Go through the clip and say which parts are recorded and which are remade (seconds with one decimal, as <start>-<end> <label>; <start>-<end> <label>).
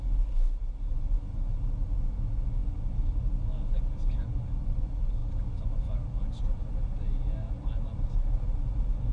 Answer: 0.0-9.1 recorded